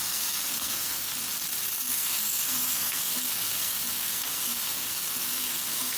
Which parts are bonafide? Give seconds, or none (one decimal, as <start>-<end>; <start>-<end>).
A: 1.1-1.8